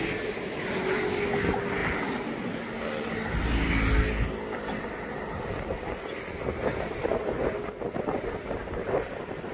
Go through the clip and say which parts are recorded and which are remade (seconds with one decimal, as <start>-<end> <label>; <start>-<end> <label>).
0.0-9.5 recorded